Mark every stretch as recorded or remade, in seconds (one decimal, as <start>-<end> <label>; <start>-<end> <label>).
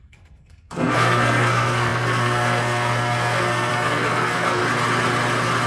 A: 0.0-4.6 remade; 4.6-5.7 recorded